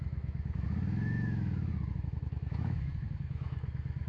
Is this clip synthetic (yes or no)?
yes